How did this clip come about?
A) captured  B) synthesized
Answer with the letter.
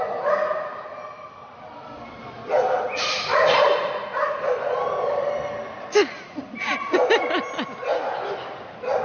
A